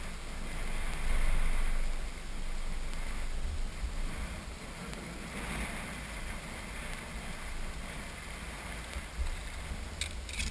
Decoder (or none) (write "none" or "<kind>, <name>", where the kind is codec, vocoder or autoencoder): none